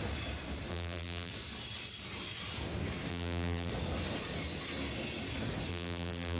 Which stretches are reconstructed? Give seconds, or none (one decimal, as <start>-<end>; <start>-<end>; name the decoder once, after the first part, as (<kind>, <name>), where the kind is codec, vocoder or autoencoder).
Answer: 0.7-1.3 (vocoder, BigVGAN v2); 3.1-3.7; 5.7-6.4